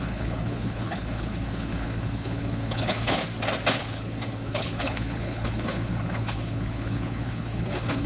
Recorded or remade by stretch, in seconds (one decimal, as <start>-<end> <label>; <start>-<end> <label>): 0.0-3.2 remade; 3.2-3.7 recorded; 3.7-8.1 remade